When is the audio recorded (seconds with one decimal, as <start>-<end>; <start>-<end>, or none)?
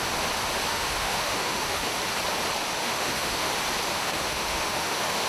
0.0-0.7; 2.0-2.8; 3.5-3.9